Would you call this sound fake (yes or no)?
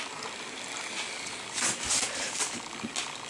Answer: no